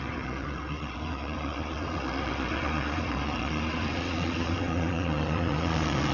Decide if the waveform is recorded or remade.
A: remade